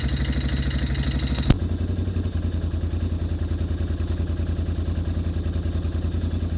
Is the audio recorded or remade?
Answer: recorded